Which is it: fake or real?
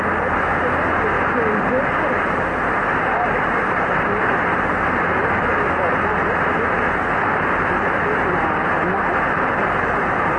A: real